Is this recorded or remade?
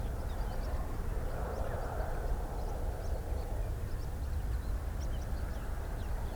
remade